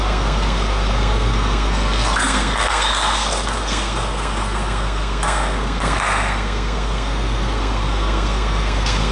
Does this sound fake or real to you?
fake